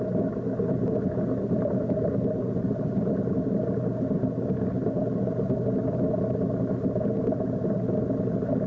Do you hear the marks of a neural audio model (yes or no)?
no